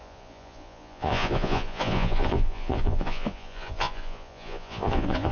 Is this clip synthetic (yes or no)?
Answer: yes